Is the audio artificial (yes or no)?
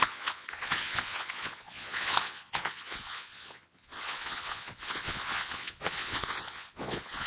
yes